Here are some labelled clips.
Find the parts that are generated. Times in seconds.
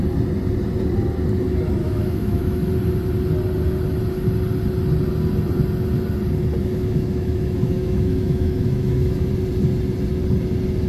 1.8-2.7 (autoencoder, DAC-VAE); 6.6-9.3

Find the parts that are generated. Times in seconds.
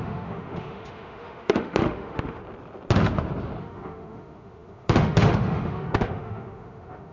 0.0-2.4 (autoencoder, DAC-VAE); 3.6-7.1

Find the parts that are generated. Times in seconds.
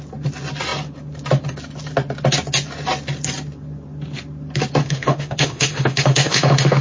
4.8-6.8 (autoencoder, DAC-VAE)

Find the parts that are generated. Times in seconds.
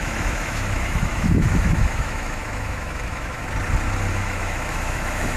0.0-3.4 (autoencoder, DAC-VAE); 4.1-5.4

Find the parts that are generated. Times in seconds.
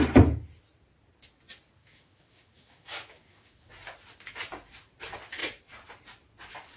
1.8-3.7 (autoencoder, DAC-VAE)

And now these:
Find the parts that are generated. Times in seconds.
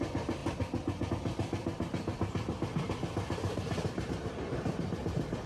none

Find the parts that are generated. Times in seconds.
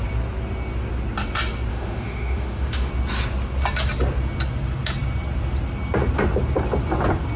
1.7-2.9 (autoencoder, DAC-VAE)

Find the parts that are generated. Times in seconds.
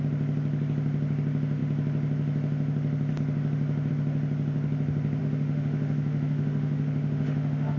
5.2-7.8 (autoencoder, DAC-VAE)